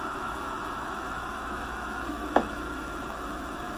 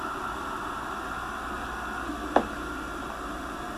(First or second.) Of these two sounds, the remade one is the first